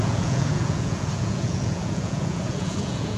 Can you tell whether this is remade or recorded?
remade